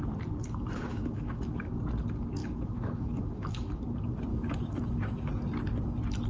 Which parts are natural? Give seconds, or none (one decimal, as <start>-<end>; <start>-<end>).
0.0-0.9; 1.7-2.4; 3.8-4.3; 5.3-6.3